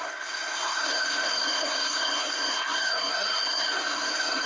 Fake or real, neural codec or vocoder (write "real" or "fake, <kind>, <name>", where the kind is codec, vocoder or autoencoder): fake, codec, SNAC